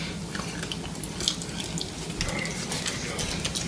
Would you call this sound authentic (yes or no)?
yes